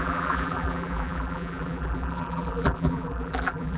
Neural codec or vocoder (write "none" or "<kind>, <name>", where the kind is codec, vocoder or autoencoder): vocoder, BigVGAN v2